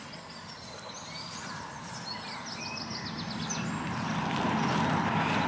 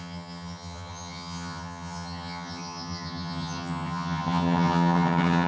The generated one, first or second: second